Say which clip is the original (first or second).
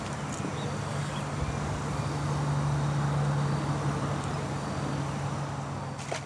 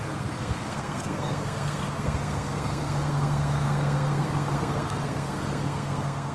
first